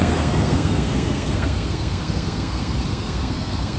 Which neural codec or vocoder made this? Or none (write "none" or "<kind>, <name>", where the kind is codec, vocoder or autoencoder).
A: codec, SNAC